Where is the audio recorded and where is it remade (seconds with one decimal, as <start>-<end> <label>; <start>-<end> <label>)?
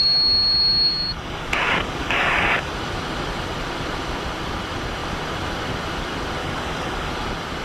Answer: 0.0-2.7 remade; 2.7-6.4 recorded; 6.4-7.1 remade; 7.1-7.6 recorded